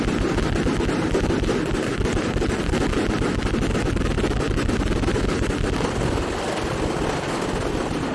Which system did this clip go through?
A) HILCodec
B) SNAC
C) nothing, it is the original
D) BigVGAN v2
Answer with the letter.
C